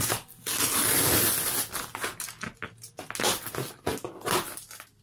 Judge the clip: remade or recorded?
recorded